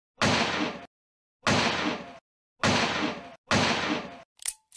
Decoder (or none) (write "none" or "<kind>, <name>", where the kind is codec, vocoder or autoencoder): none